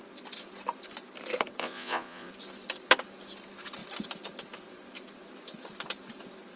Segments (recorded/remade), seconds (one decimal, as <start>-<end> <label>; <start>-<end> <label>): 0.0-1.6 recorded; 1.6-2.3 remade; 2.3-6.6 recorded